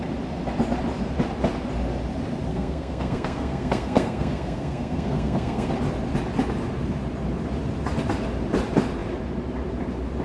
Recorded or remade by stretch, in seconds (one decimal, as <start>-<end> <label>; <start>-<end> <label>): 0.0-2.5 recorded; 2.5-5.7 remade; 5.7-10.2 recorded